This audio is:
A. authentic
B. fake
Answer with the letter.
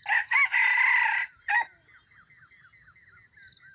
A